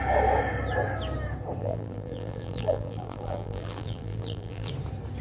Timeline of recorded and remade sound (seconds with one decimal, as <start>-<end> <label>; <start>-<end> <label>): 0.0-1.6 recorded; 1.6-4.7 remade; 4.7-5.2 recorded